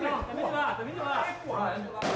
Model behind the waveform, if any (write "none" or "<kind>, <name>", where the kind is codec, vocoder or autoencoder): none